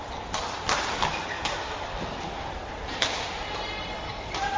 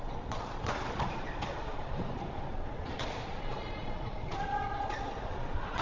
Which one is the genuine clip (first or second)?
first